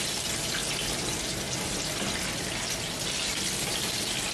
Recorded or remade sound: recorded